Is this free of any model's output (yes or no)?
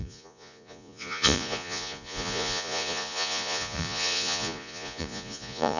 no